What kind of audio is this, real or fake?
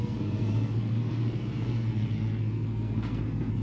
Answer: fake